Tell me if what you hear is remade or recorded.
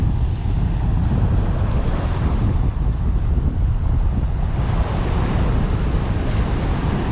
recorded